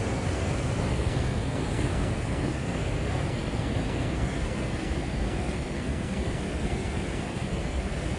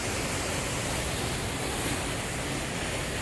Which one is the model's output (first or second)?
first